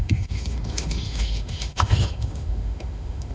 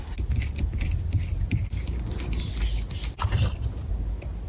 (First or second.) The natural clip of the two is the second